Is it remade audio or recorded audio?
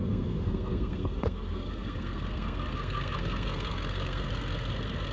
remade